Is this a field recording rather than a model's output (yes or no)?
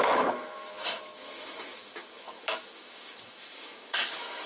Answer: no